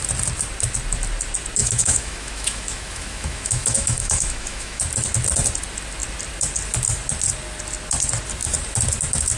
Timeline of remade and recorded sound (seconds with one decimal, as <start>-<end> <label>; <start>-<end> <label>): 0.0-1.6 recorded; 1.6-4.8 remade; 4.8-9.4 recorded